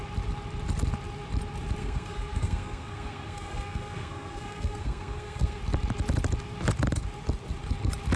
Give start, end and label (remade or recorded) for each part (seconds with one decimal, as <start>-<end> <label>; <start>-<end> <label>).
0.0-1.8 recorded; 1.8-5.6 remade; 5.6-8.2 recorded